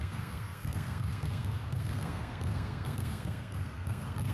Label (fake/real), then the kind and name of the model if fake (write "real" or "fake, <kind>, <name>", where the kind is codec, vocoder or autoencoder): fake, codec, SNAC